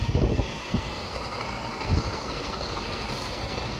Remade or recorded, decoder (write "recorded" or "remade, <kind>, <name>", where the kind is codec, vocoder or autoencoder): remade, codec, SNAC